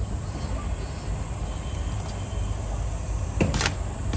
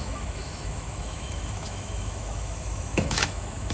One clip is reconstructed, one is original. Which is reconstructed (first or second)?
second